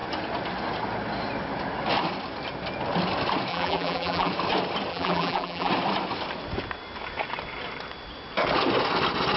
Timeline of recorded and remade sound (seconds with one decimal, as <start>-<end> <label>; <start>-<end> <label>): 0.0-3.5 recorded; 3.5-4.3 remade; 4.3-4.9 recorded; 4.9-5.7 remade; 5.7-9.4 recorded